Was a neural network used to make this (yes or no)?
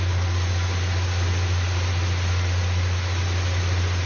no